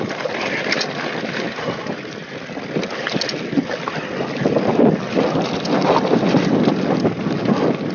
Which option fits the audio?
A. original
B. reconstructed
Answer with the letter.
A